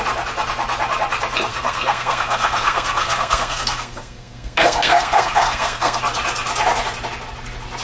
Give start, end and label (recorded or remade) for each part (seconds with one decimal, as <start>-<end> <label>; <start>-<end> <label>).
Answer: 0.0-1.5 recorded; 1.5-6.0 remade; 6.0-7.8 recorded